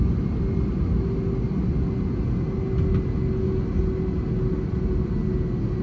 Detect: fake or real real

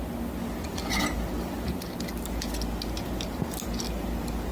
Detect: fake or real real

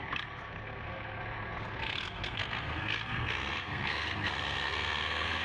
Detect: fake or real fake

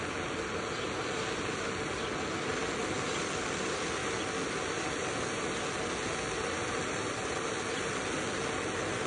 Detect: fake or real real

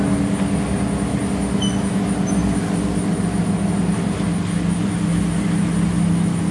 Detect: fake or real real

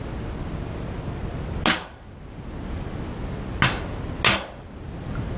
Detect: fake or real real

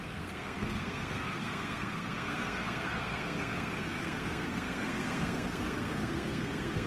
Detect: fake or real fake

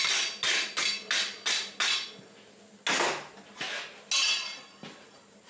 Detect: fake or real real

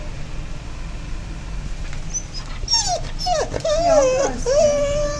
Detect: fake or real real